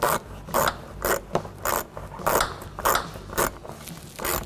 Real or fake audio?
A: real